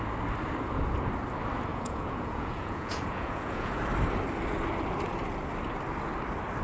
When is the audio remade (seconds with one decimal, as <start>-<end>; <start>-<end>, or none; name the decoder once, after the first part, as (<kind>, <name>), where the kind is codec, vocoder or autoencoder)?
1.7-3.8 (vocoder, Vocos)